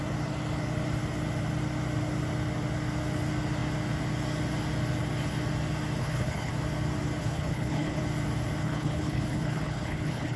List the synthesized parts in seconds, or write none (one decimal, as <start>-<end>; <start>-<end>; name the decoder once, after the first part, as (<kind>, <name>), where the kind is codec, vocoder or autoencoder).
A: 6.0-6.5 (codec, HILCodec); 7.2-8.0; 8.6-10.4